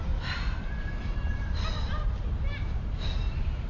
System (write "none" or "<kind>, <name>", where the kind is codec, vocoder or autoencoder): vocoder, BigVGAN v2